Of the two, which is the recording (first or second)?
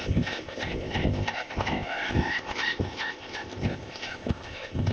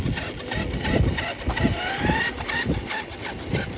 second